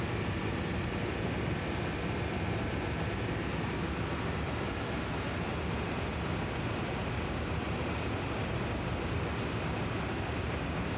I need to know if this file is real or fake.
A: real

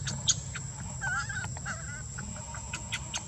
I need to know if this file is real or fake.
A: real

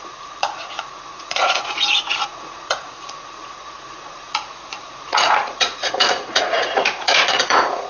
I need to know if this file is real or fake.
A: fake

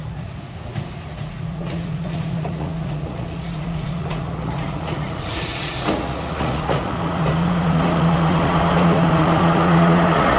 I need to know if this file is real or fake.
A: fake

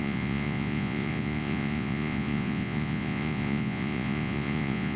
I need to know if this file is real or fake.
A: fake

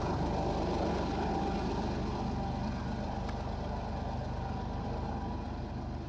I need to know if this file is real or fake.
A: real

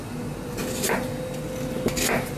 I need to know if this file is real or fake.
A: real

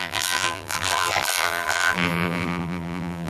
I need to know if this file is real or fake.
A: fake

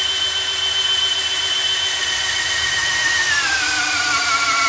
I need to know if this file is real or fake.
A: real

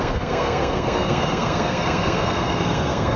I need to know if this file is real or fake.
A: fake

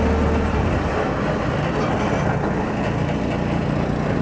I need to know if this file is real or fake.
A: real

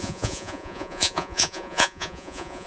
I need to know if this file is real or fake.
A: fake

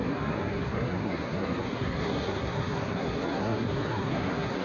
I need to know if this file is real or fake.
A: fake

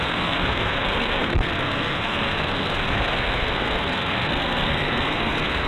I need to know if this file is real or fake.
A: fake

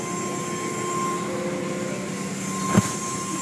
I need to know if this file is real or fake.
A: real